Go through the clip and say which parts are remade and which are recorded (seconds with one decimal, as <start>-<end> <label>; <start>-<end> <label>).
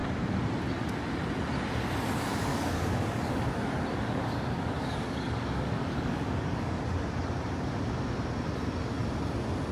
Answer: 0.0-2.5 recorded; 2.5-3.5 remade; 3.5-3.9 recorded; 3.9-6.8 remade; 6.8-9.7 recorded